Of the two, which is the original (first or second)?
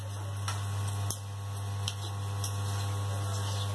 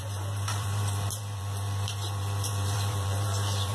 first